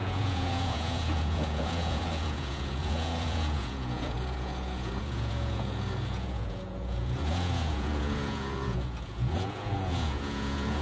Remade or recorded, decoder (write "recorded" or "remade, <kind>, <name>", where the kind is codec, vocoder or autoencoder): remade, vocoder, Vocos